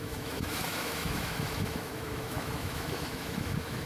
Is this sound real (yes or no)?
no